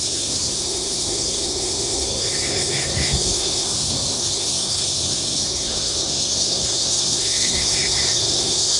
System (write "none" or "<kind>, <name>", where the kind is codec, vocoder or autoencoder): codec, SNAC